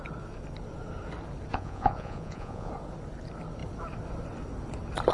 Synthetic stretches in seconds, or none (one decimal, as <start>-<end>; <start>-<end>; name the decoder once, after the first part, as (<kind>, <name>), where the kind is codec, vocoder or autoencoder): 1.5-2.7 (vocoder, Vocos)